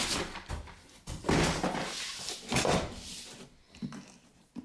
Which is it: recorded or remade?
recorded